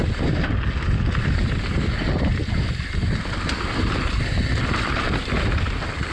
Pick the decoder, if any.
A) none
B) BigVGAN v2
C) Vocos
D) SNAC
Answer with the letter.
A